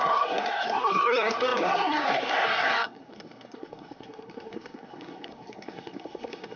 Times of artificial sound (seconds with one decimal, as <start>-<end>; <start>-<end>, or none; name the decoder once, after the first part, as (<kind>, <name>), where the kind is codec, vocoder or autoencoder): 0.0-6.6 (codec, SNAC)